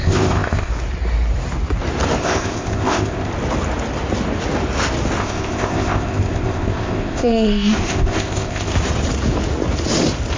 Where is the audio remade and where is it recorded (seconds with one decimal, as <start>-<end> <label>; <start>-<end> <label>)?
0.0-0.7 remade; 0.7-2.2 recorded; 2.2-3.3 remade; 3.3-5.2 recorded; 5.2-8.7 remade; 8.7-10.4 recorded